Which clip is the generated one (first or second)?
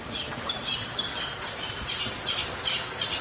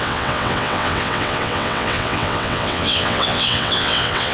second